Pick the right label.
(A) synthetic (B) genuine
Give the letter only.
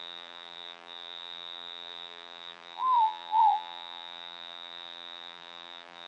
A